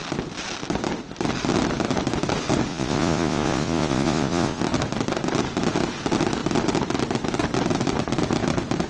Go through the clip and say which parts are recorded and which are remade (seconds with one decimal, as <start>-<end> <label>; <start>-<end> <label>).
0.0-2.7 recorded; 2.7-4.6 remade; 4.6-8.9 recorded